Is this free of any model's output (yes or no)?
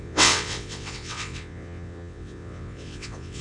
no